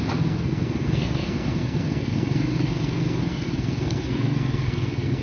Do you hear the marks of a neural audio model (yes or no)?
yes